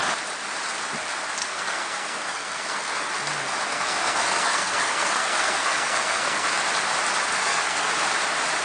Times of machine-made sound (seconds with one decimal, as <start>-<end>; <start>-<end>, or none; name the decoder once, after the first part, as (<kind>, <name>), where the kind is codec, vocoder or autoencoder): 1.4-3.1 (codec, SNAC); 3.7-6.6; 7.3-7.9